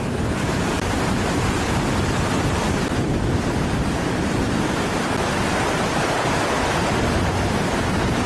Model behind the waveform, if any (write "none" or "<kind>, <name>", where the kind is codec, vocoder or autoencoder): none